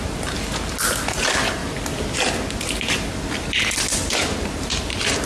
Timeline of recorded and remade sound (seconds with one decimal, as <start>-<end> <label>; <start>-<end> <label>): 0.0-5.3 recorded